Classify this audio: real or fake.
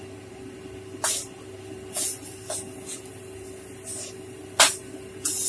real